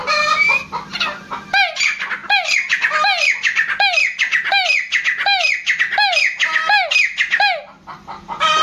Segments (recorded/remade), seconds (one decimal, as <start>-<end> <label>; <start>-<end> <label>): 0.0-8.6 recorded